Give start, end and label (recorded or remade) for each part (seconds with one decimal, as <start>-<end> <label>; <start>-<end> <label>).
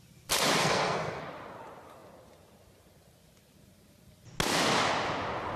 0.0-0.6 recorded; 0.6-1.2 remade; 1.2-5.6 recorded